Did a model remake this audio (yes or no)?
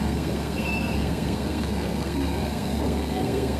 yes